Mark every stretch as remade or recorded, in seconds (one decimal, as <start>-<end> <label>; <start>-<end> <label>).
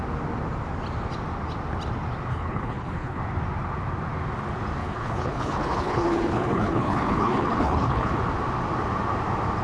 0.0-2.3 recorded; 2.3-3.2 remade; 3.2-4.8 recorded; 4.8-8.1 remade; 8.1-9.6 recorded